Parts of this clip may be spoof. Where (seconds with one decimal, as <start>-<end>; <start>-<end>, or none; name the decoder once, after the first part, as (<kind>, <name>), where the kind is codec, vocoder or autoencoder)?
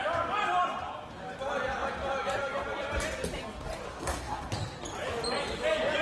3.9-4.5 (codec, SNAC)